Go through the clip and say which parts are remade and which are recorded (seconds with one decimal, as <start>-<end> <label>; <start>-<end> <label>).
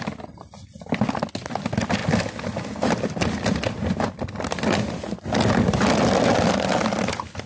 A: 0.0-7.5 recorded